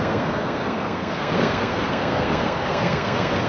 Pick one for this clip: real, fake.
fake